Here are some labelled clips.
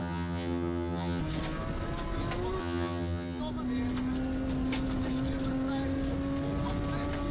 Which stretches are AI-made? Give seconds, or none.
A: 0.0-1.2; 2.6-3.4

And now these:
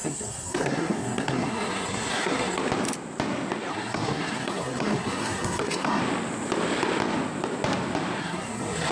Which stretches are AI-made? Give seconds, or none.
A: 0.0-2.6; 3.7-6.0; 8.2-8.9

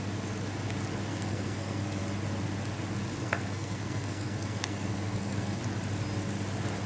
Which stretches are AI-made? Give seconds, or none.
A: 1.1-2.0; 3.2-5.6

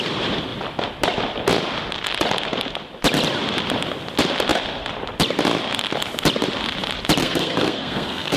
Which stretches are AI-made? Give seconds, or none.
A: 7.2-8.4

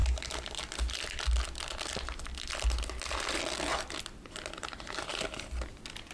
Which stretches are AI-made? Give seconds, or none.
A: none

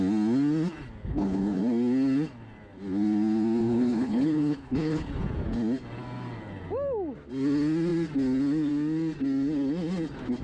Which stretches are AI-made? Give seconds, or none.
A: 1.1-1.6; 3.6-5.1

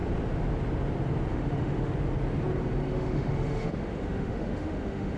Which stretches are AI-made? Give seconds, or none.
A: 1.3-1.9; 2.8-5.2